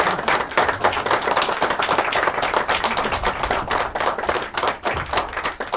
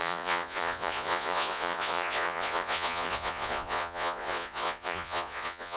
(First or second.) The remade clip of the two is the second